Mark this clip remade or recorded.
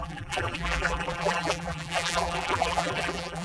remade